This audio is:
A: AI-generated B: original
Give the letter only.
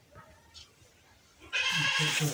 B